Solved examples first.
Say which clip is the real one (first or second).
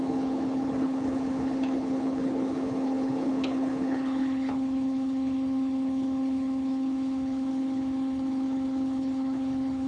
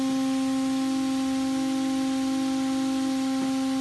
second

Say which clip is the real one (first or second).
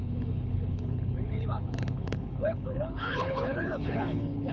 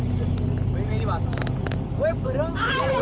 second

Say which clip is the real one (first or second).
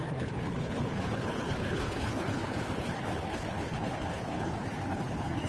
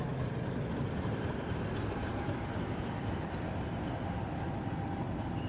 second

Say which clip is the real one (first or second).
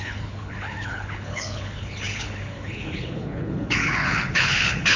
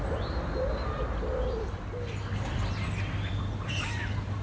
second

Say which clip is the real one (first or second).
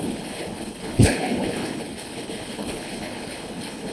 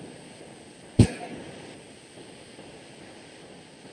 second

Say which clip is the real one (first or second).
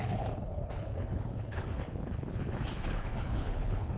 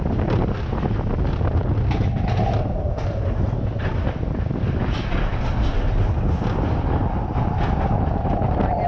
second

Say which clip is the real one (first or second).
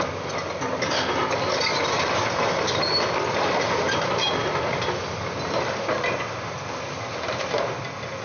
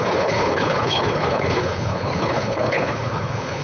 first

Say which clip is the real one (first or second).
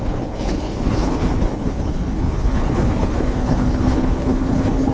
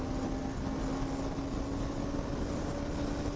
second